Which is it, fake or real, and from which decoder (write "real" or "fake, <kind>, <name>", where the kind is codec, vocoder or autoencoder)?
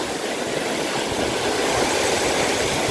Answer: real